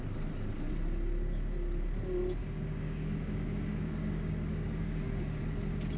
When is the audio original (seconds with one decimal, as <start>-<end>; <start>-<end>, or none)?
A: 0.0-2.4; 5.4-6.0